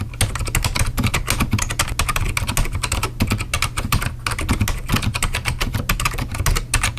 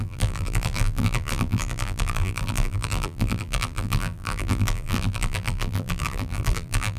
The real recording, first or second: first